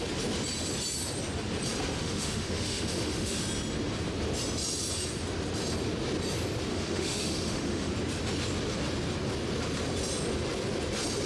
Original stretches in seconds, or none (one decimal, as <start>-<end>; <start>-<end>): 0.0-2.0; 3.4-6.7; 7.9-11.3